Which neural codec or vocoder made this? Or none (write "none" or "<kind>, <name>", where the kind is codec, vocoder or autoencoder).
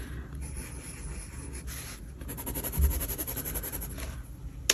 none